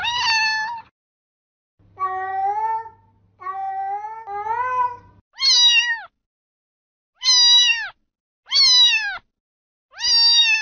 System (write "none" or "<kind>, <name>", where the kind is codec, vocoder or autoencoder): none